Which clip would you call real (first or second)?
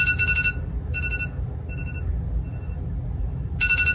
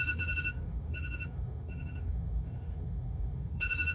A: first